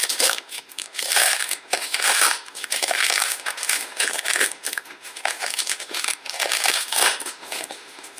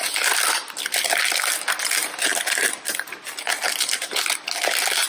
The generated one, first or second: first